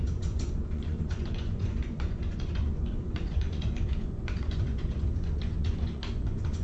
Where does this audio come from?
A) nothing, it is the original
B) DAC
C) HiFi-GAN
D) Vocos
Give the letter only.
D